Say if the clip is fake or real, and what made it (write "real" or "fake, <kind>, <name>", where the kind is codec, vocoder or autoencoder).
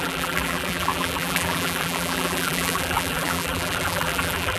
fake, vocoder, BigVGAN v2